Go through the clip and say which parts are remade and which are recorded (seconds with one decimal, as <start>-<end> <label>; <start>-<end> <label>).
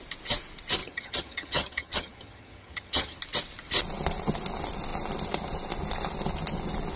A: 0.0-0.8 recorded; 0.8-3.2 remade; 3.2-7.0 recorded